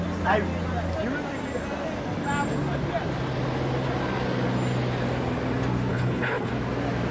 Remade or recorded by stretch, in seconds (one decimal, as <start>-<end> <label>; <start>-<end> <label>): 0.0-5.9 recorded; 5.9-6.5 remade; 6.5-7.1 recorded